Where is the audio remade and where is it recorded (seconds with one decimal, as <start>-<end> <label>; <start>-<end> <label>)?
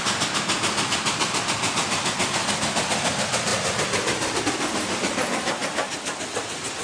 0.0-6.8 recorded